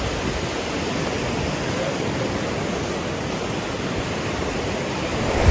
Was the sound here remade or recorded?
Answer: recorded